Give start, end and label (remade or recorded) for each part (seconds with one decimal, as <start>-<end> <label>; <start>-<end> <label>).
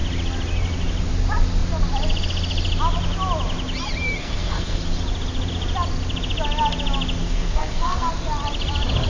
0.0-4.2 recorded; 4.2-4.8 remade; 4.8-7.2 recorded; 7.2-8.1 remade; 8.1-9.1 recorded